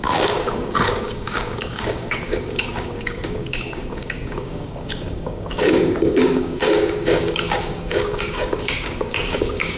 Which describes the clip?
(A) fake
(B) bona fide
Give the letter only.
A